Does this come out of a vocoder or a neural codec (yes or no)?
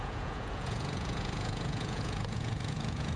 yes